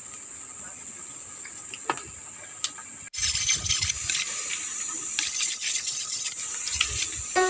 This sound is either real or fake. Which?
real